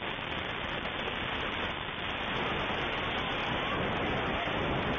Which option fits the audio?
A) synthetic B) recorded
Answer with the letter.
B